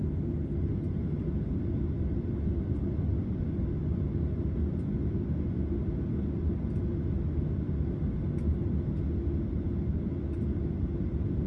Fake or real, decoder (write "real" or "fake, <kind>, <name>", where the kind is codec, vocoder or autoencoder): real